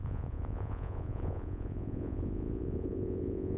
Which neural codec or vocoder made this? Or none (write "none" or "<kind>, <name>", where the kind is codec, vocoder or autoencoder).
vocoder, Vocos